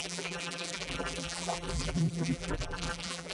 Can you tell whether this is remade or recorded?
remade